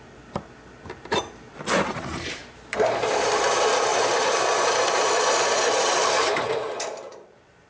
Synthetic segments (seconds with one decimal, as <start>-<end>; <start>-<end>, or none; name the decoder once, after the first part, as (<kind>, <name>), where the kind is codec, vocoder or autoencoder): 0.0-7.7 (vocoder, BigVGAN v2)

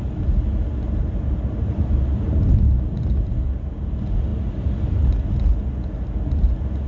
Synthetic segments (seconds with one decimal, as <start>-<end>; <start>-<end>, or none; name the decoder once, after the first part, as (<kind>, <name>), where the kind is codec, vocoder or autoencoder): none

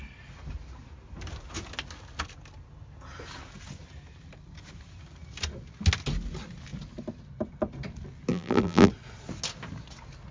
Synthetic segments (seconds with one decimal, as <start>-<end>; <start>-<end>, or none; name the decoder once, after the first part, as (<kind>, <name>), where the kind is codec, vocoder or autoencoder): 8.3-8.9 (vocoder, BigVGAN v2)

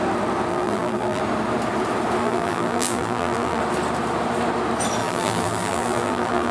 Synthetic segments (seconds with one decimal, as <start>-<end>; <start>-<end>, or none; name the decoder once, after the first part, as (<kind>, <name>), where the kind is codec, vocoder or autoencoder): 0.5-1.2 (vocoder, BigVGAN v2); 2.2-3.6; 5.0-6.5

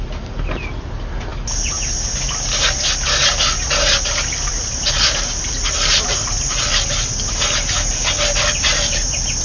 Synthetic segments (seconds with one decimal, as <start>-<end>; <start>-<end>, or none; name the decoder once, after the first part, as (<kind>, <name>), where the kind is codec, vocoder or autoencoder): none